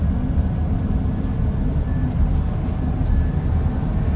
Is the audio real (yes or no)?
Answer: yes